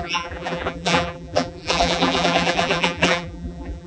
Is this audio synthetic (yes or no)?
yes